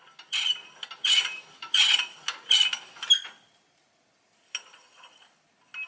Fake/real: real